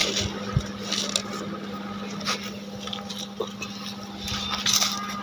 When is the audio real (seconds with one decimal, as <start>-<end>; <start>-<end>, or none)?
0.0-5.2